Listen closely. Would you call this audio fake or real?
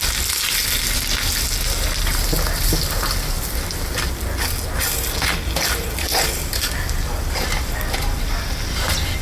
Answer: real